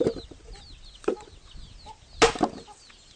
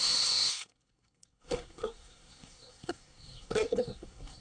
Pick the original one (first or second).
first